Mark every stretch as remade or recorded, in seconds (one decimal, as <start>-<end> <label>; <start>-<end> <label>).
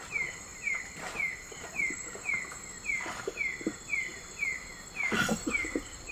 0.0-6.1 recorded